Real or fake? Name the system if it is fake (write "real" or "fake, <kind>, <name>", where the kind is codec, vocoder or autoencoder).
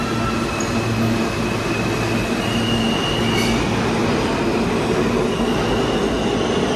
real